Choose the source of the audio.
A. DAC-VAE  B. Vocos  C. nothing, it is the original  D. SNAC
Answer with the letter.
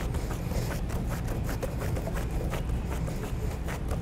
C